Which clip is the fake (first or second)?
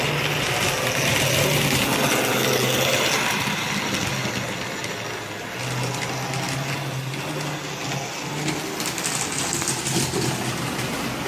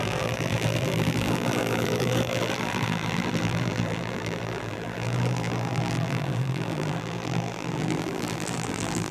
second